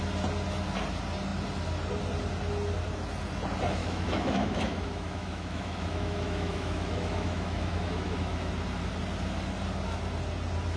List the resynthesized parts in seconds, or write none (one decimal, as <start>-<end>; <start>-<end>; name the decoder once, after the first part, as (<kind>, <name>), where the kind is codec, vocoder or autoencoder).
3.8-8.5 (autoencoder, DAC-VAE)